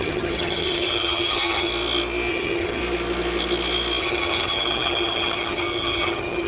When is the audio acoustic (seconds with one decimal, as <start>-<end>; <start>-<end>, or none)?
1.7-2.3; 2.8-4.0